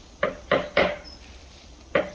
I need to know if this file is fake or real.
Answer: real